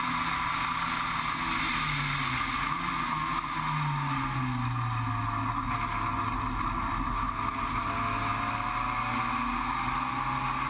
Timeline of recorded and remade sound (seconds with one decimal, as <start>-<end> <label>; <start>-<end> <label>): 0.0-10.7 recorded